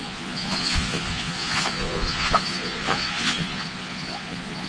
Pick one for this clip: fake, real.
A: fake